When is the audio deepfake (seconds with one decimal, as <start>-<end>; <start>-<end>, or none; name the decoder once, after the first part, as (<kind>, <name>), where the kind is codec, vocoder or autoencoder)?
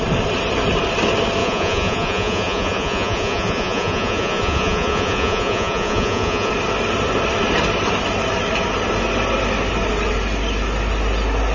1.4-6.5 (vocoder, Vocos)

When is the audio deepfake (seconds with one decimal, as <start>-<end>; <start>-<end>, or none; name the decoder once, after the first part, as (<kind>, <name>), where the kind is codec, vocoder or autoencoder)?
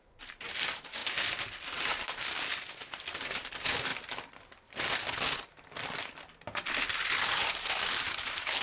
0.0-1.0 (vocoder, BigVGAN v2); 1.7-3.9; 7.7-8.6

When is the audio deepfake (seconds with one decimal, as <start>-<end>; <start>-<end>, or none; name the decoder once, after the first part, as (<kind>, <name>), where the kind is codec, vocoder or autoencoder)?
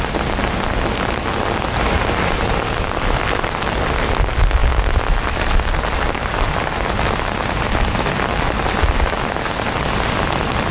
none